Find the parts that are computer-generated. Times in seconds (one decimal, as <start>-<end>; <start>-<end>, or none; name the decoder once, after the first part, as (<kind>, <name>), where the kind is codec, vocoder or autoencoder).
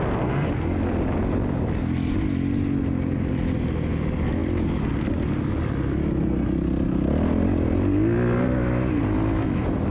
none